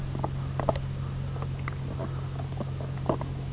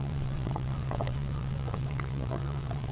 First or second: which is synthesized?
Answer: second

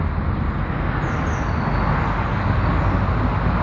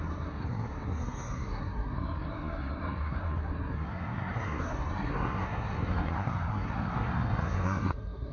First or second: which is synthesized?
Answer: second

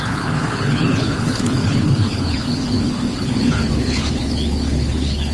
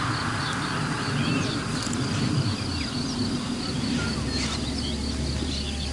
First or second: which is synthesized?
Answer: first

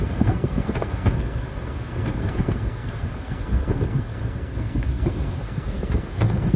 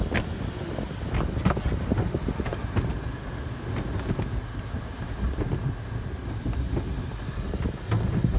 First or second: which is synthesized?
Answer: first